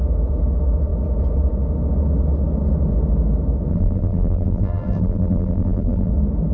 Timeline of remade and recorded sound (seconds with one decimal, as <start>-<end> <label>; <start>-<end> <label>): 0.0-3.7 recorded; 3.7-6.1 remade; 6.1-6.5 recorded

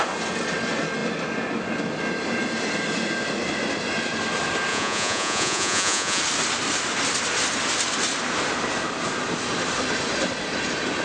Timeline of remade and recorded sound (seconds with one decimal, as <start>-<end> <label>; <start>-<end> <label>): 0.0-4.7 recorded; 4.7-6.2 remade; 6.2-11.0 recorded

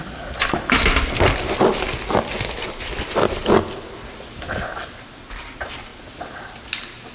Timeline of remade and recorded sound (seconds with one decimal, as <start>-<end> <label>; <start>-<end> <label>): 0.0-7.1 recorded

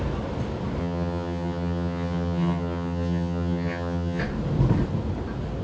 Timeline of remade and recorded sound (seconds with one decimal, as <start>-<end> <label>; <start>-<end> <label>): 0.0-0.8 recorded; 0.8-4.2 remade; 4.2-5.6 recorded

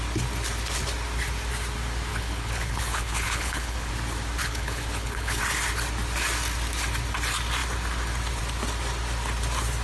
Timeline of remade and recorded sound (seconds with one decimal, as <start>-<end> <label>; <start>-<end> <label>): 0.0-2.1 recorded; 2.1-3.9 remade; 3.9-4.4 recorded; 4.4-5.4 remade; 5.4-9.8 recorded

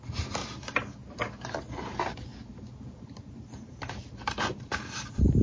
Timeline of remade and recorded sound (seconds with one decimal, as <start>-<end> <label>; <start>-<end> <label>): 0.0-2.3 recorded; 2.3-3.9 remade; 3.9-5.4 recorded